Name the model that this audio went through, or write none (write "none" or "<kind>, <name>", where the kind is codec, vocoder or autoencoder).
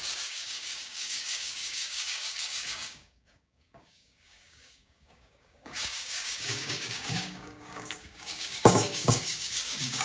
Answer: codec, DAC